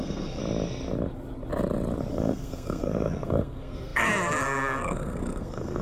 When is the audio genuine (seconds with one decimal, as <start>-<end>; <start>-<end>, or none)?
0.4-2.1